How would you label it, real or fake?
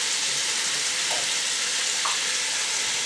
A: real